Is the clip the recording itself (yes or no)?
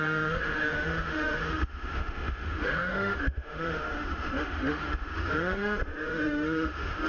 no